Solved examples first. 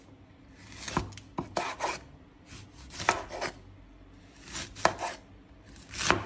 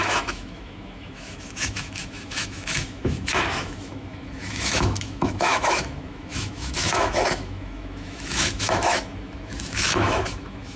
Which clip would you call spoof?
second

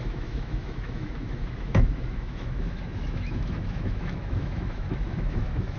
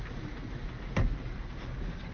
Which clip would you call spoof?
first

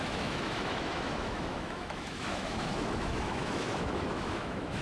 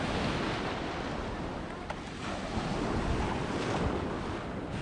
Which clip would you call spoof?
first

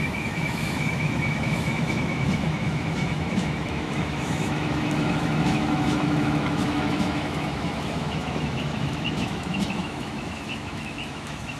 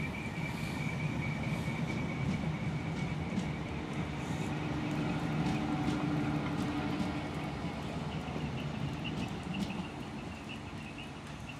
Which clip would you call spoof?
first